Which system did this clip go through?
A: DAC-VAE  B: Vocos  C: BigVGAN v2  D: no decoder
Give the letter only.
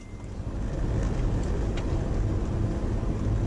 D